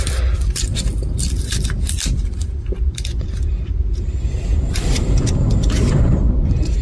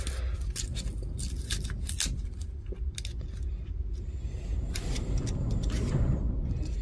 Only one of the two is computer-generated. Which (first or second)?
first